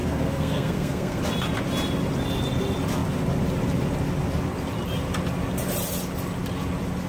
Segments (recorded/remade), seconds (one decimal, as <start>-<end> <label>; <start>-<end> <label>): 0.0-1.2 remade; 1.2-7.1 recorded